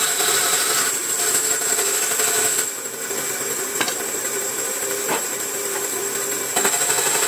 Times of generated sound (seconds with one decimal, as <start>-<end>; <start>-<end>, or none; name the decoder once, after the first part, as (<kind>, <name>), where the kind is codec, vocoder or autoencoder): 0.0-1.0 (vocoder, BigVGAN v2); 3.3-6.0